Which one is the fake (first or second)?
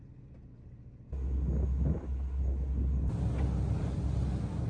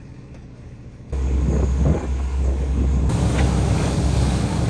second